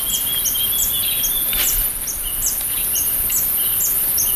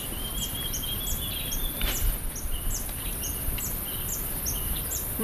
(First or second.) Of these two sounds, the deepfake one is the second